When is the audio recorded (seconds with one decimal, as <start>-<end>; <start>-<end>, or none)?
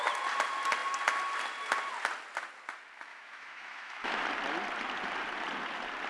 0.0-3.1; 4.2-6.1